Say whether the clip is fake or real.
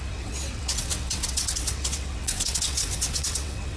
fake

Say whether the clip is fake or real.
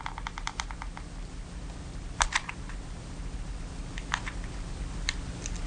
real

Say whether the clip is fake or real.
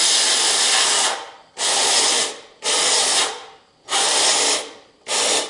fake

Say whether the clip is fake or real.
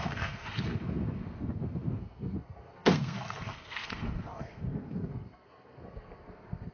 fake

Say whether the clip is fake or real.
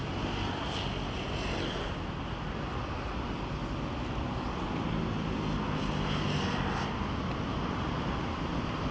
real